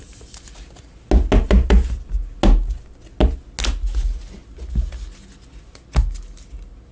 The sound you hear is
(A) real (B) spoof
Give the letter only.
A